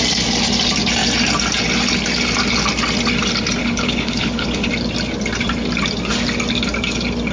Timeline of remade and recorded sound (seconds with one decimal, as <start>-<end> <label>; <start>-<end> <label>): 0.0-3.6 recorded; 3.6-4.7 remade; 4.7-7.3 recorded